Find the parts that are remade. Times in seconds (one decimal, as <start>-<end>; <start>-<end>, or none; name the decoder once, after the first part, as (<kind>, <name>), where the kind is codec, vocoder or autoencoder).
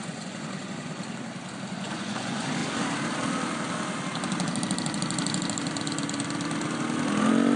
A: 0.0-0.9 (vocoder, Vocos); 1.7-2.6